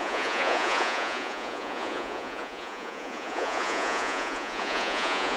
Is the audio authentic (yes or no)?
no